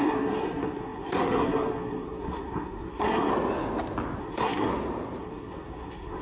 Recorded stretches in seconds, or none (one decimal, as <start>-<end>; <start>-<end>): 3.3-4.2; 4.7-5.2